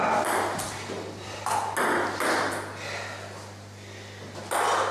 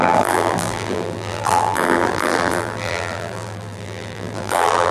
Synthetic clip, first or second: second